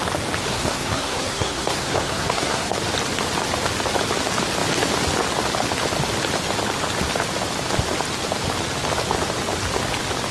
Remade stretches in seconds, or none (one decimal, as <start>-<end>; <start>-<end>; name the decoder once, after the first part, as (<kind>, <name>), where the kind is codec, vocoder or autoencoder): 0.5-2.8 (codec, SNAC)